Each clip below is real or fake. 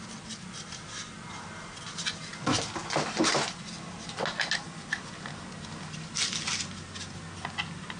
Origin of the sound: real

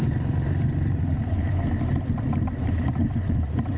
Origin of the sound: real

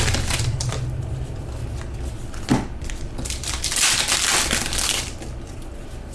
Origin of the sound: real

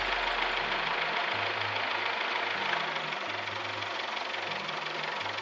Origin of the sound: real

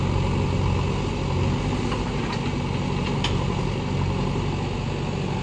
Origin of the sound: real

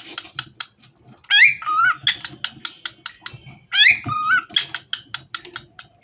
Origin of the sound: real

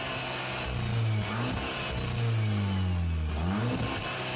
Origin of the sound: real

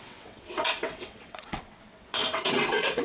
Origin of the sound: fake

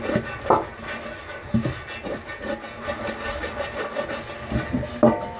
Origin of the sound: real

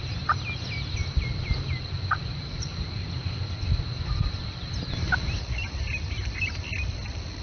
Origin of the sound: real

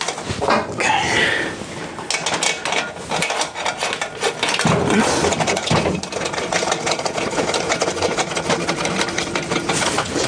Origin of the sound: real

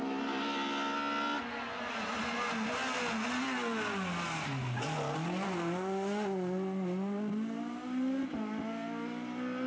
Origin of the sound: real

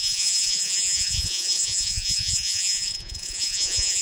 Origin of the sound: fake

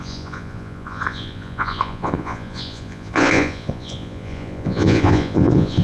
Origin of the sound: fake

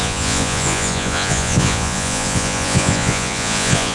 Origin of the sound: fake